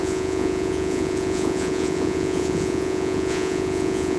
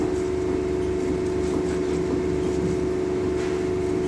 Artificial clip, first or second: first